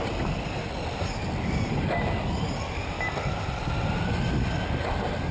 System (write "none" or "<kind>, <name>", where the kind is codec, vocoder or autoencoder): none